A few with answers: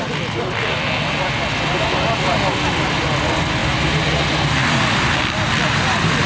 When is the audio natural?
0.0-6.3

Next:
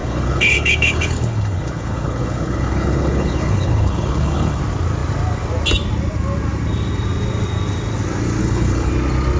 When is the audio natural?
4.6-8.4; 8.9-9.4